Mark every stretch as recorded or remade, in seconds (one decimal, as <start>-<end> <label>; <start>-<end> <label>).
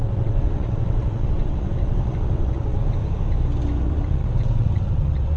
0.0-2.8 remade; 2.8-3.8 recorded; 3.8-5.4 remade